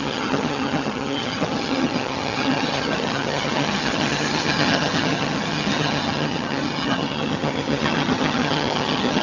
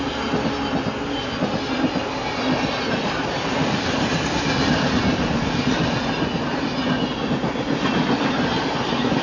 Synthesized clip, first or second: first